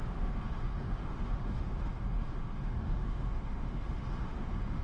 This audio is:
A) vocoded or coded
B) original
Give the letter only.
A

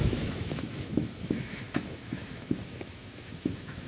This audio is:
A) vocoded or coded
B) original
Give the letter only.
A